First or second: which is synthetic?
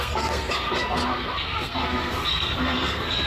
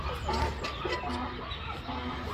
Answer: first